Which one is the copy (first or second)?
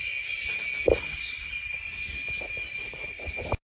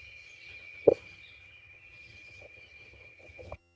second